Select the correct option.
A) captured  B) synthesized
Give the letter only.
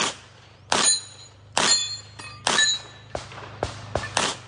A